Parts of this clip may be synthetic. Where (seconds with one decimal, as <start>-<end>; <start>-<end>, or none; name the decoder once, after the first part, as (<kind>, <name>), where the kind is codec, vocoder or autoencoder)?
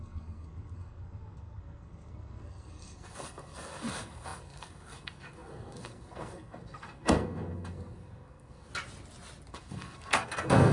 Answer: 0.0-8.7 (codec, SNAC); 9.5-10.7